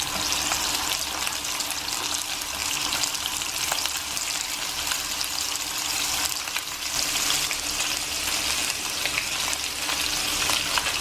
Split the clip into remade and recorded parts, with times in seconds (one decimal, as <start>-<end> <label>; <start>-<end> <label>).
0.0-2.6 recorded; 2.6-6.5 remade; 6.5-11.0 recorded